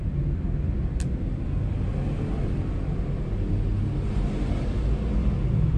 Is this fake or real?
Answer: real